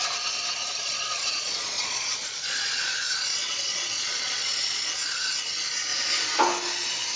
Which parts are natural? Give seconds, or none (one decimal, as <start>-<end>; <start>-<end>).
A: 0.0-0.6; 4.9-7.2